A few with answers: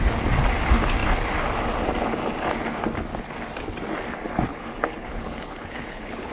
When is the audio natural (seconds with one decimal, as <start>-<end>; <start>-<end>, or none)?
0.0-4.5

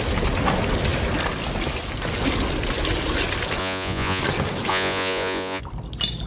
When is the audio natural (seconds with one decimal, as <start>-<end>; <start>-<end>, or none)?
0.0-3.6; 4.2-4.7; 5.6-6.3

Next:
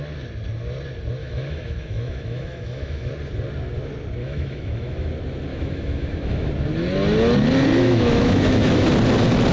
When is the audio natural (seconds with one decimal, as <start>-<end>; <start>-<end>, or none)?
0.0-1.2; 3.1-4.2; 5.1-5.5; 6.5-7.8; 8.9-9.5

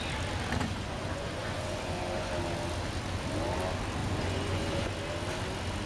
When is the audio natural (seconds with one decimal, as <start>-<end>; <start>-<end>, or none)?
0.0-0.6; 2.3-4.0; 4.9-5.9

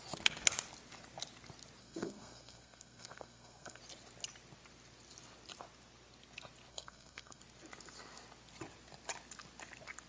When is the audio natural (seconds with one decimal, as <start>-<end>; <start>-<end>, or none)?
0.0-1.8; 3.8-6.7; 7.4-10.1

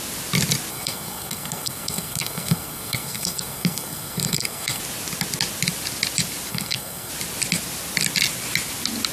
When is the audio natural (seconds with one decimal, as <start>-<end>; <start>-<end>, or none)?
0.0-0.7; 4.8-6.5; 7.1-9.1